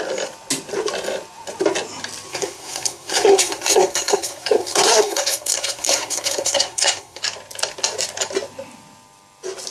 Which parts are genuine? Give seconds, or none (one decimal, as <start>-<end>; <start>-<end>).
0.0-2.3; 7.2-9.7